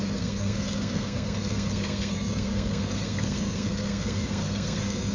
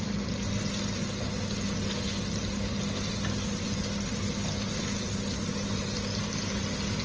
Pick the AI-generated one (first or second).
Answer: first